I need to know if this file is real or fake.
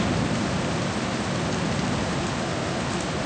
real